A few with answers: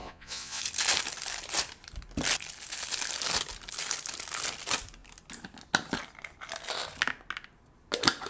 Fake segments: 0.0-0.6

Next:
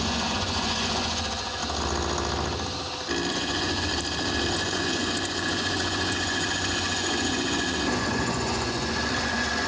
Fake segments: 0.0-1.6; 3.3-3.9; 4.5-9.7

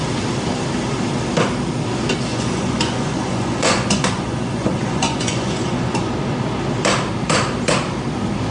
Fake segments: 2.3-6.1

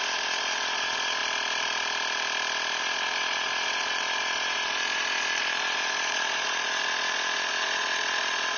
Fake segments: 0.0-1.2; 2.8-8.6

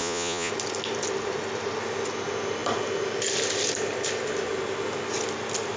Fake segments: 0.0-0.5

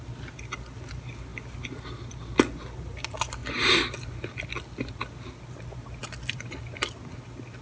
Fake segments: none

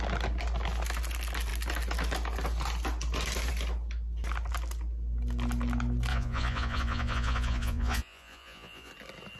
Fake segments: 6.1-8.9